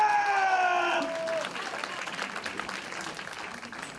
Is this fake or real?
real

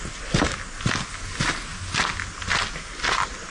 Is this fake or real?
real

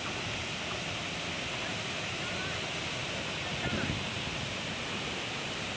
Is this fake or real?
real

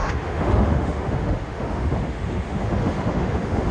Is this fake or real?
fake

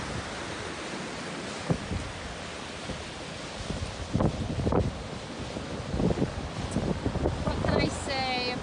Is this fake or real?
real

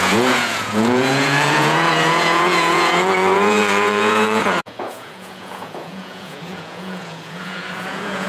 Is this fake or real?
fake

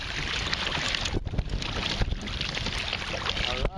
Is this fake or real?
real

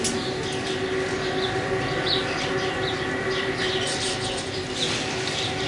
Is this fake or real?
real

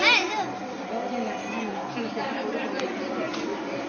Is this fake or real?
real